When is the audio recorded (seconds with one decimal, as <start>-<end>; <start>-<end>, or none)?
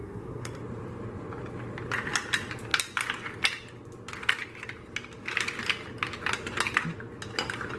0.6-7.8